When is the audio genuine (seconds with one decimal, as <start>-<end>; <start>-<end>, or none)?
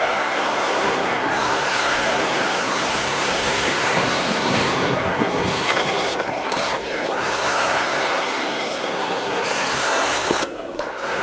none